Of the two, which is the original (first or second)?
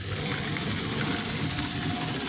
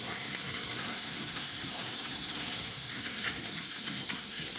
first